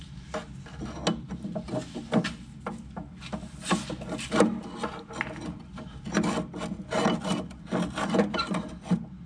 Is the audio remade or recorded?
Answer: recorded